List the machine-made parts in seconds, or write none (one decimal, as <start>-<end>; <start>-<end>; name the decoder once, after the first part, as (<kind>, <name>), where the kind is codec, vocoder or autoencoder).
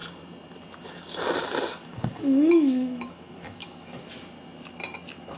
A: 1.8-4.0 (autoencoder, DAC-VAE)